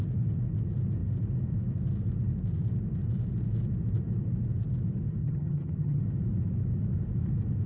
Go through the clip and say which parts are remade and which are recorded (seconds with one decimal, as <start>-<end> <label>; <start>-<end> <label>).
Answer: 0.0-5.2 recorded; 5.2-6.0 remade; 6.0-7.7 recorded